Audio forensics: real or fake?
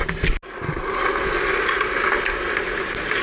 real